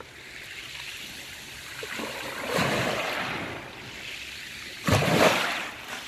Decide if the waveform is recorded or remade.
recorded